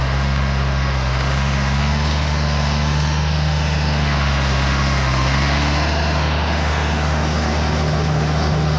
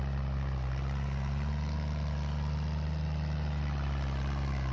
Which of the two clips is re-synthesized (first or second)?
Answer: first